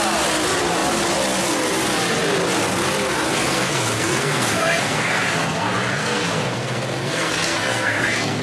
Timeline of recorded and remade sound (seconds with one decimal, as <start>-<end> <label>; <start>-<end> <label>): 0.0-3.3 recorded; 3.3-8.4 remade